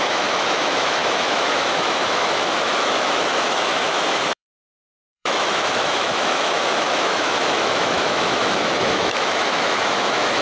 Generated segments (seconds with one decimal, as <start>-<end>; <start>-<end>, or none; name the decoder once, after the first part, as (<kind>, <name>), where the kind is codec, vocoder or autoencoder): 0.0-10.4 (autoencoder, DAC-VAE)